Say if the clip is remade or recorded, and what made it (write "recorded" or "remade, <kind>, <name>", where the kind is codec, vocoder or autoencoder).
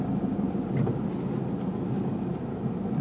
recorded